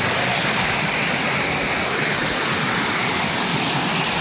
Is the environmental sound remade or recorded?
recorded